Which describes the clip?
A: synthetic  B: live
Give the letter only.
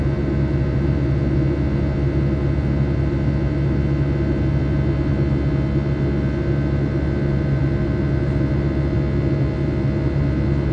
B